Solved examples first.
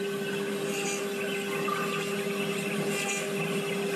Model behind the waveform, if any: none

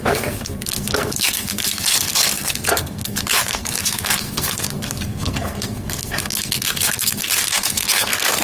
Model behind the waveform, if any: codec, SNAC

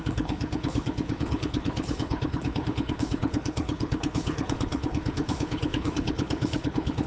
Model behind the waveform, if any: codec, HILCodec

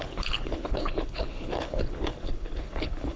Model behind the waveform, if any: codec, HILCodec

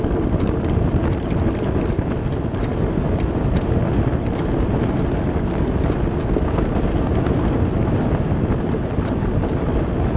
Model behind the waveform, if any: none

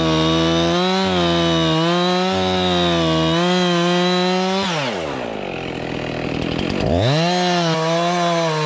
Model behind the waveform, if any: none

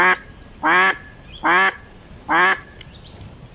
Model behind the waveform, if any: none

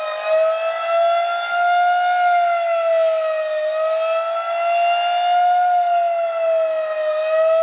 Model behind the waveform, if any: none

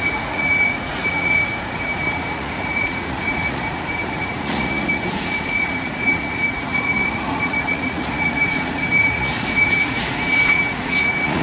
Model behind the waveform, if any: vocoder, Vocos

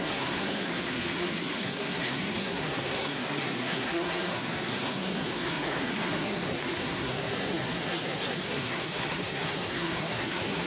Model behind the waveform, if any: codec, SNAC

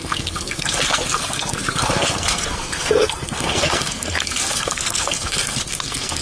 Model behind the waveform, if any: codec, SNAC